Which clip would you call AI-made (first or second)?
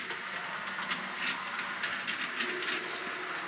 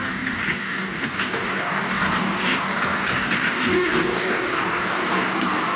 second